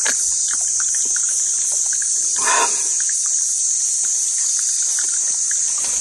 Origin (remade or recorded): recorded